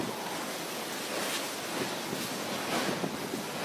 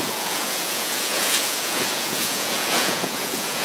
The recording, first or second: first